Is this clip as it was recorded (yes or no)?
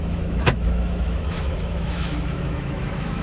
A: no